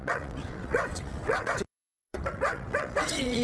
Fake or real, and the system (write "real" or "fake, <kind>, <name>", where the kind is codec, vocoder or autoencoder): fake, vocoder, WaveNeXt